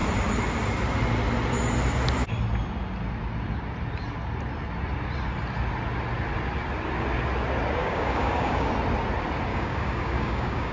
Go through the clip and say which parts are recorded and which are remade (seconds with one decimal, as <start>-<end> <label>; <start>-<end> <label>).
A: 0.0-7.8 recorded; 7.8-8.7 remade; 8.7-9.5 recorded; 9.5-10.7 remade